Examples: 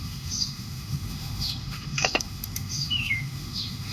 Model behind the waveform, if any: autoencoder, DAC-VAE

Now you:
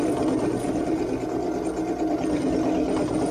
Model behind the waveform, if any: none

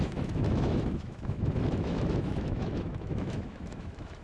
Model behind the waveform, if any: autoencoder, DAC-VAE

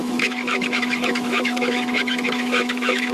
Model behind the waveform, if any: autoencoder, DAC-VAE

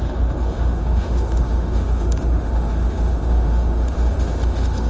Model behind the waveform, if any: autoencoder, DAC-VAE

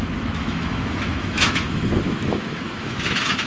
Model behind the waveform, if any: autoencoder, DAC-VAE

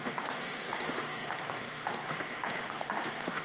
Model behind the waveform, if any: autoencoder, DAC-VAE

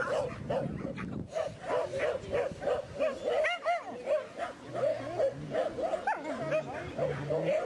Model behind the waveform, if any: none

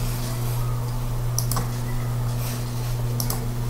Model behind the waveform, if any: none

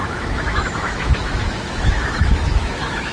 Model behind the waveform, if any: autoencoder, DAC-VAE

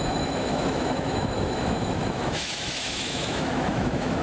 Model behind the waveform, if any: autoencoder, DAC-VAE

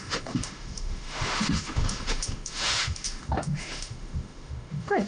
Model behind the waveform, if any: autoencoder, DAC-VAE